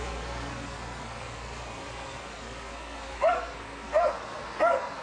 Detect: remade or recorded remade